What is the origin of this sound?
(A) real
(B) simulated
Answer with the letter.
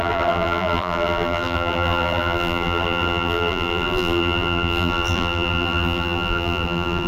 B